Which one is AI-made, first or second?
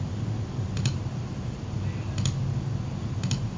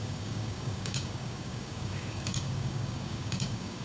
second